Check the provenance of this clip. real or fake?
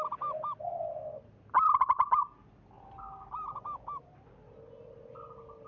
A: real